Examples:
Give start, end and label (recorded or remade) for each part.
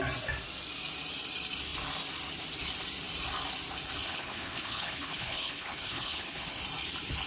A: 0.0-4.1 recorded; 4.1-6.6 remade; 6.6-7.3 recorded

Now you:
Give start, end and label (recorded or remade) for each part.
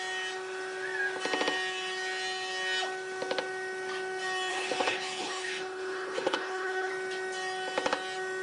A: 0.0-4.5 recorded; 4.5-6.9 remade; 6.9-8.4 recorded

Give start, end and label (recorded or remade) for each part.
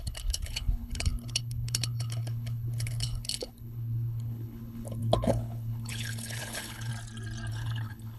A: 0.0-6.9 remade; 6.9-7.5 recorded; 7.5-8.2 remade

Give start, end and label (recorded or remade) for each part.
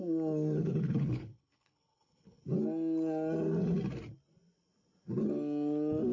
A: 0.0-0.6 recorded; 0.6-2.4 remade; 2.4-6.1 recorded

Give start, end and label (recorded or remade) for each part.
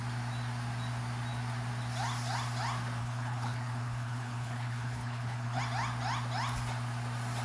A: 0.0-3.0 recorded; 3.0-5.6 remade; 5.6-7.4 recorded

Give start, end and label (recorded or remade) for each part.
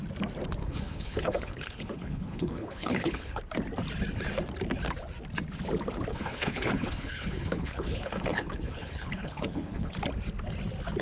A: 0.0-0.6 recorded; 0.6-3.4 remade; 3.4-6.1 recorded; 6.1-9.9 remade; 9.9-11.0 recorded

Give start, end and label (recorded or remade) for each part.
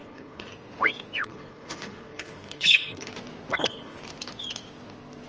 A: 0.0-0.5 remade; 0.5-1.2 recorded; 1.2-3.1 remade; 3.1-3.5 recorded; 3.5-4.0 remade; 4.0-5.3 recorded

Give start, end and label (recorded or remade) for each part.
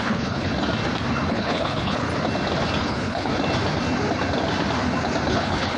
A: 0.0-0.5 remade; 0.5-1.3 recorded; 1.3-2.1 remade; 2.1-2.8 recorded; 2.8-3.3 remade; 3.3-5.3 recorded; 5.3-5.8 remade